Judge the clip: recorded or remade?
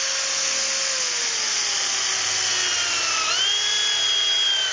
recorded